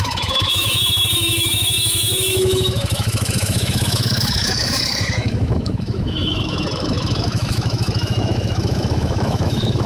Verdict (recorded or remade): remade